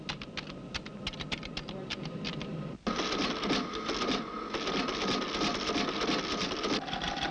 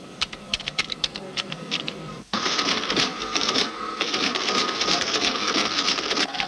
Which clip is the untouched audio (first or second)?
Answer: first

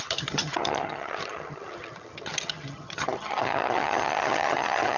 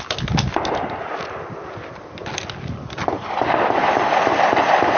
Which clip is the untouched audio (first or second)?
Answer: second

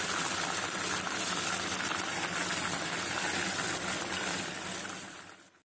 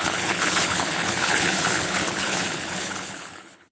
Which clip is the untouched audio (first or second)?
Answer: first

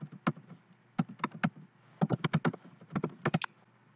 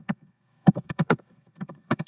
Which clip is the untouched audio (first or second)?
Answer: first